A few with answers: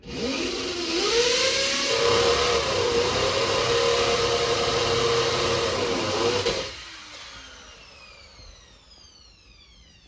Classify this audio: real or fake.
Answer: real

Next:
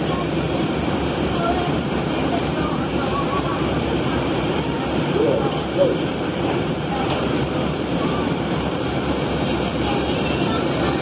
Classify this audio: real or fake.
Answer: fake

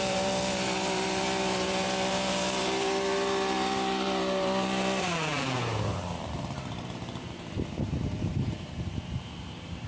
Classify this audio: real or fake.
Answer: fake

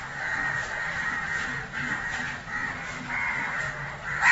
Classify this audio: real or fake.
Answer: real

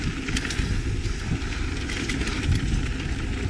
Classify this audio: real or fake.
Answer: real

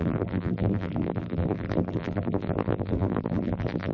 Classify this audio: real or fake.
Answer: fake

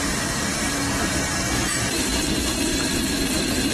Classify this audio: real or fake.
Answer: real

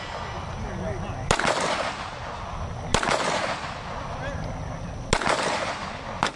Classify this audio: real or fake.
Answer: real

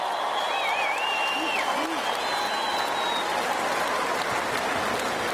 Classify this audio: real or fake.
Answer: real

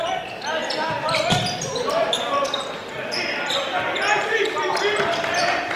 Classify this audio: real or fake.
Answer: fake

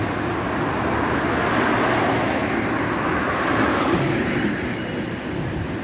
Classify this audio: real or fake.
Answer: real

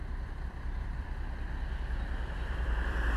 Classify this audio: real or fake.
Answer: fake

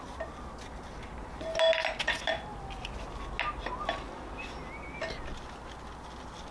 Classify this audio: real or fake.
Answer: real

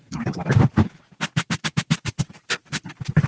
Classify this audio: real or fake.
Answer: fake